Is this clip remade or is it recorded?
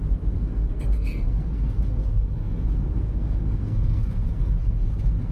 remade